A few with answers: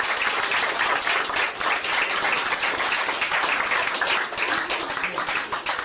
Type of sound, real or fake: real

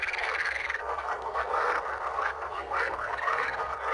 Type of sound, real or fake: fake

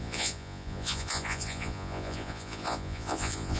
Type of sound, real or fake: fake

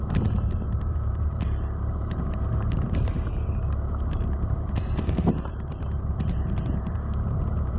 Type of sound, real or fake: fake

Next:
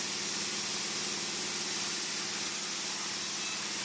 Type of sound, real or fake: real